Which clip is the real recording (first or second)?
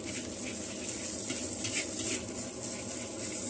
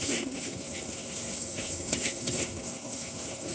first